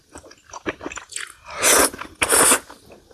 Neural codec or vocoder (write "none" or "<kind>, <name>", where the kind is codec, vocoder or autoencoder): none